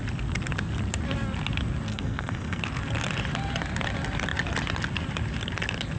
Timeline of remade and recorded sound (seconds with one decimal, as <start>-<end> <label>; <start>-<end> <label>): 0.0-1.9 recorded; 1.9-2.6 remade; 2.6-6.0 recorded